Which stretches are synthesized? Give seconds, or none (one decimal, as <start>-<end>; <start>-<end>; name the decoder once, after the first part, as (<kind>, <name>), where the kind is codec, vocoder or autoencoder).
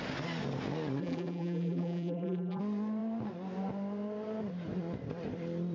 1.0-2.6 (vocoder, BigVGAN v2)